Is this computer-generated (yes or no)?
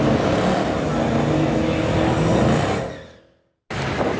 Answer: no